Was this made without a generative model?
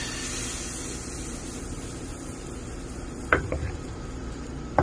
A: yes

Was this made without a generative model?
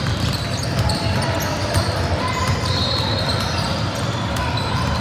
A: no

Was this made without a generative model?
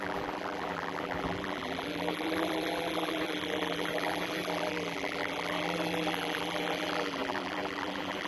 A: no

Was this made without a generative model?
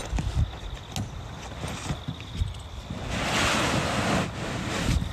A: yes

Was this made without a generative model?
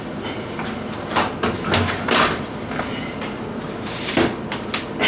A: yes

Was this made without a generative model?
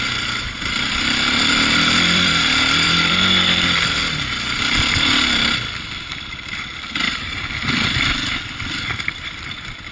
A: no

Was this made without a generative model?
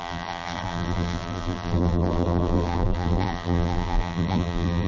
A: no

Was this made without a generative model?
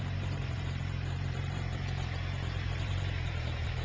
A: no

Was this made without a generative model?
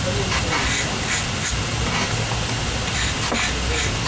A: yes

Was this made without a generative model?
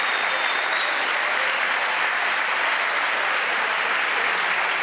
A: no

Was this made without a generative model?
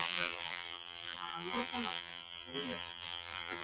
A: no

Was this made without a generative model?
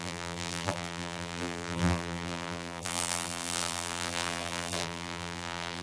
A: no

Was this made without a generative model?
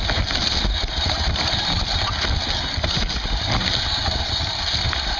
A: yes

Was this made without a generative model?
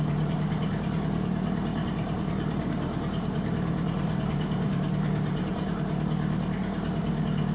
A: no